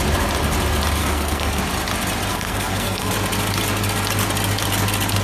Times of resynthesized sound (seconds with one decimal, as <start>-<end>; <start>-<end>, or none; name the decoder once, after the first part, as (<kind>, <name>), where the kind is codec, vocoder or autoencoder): 1.0-1.6 (codec, SNAC); 2.3-3.1